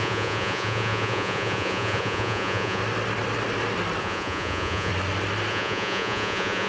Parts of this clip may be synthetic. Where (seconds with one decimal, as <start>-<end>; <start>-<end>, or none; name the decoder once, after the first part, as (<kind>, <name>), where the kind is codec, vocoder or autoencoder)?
0.0-2.8 (vocoder, Vocos); 4.0-4.9; 5.5-6.7